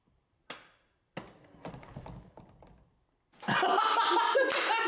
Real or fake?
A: real